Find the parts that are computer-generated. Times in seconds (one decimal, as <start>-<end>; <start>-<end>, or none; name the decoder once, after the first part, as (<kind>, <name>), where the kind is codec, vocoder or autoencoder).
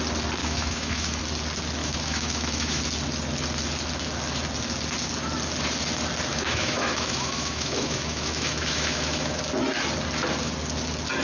0.4-1.2 (autoencoder, DAC-VAE); 1.8-2.8; 6.3-9.4